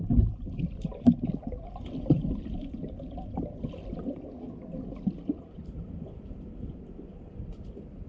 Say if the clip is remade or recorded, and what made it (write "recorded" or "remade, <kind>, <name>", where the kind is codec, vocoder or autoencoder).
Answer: remade, vocoder, BigVGAN v2